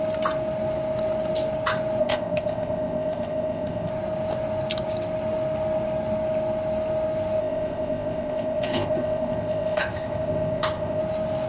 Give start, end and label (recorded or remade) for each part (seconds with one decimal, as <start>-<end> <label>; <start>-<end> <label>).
0.0-2.0 recorded; 2.0-3.9 remade; 3.9-7.4 recorded; 7.4-11.0 remade; 11.0-11.5 recorded